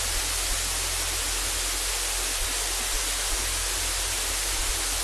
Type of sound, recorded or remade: recorded